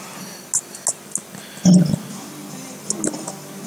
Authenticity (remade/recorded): recorded